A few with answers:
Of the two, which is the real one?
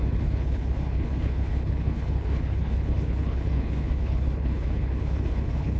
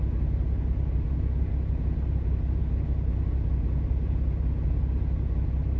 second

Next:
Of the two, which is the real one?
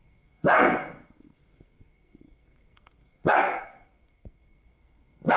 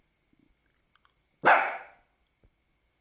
second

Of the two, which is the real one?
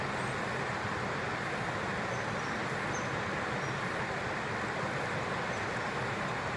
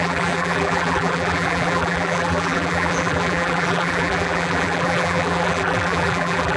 first